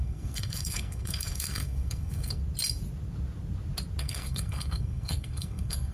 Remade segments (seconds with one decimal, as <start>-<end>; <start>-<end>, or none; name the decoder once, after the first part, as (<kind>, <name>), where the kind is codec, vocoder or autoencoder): 0.0-2.4 (codec, SNAC); 4.0-5.9